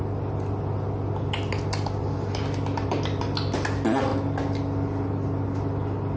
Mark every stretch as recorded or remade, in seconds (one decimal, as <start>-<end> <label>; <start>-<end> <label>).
0.0-6.2 recorded